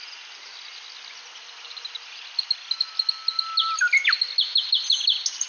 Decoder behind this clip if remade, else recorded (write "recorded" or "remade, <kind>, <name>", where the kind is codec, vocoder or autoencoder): recorded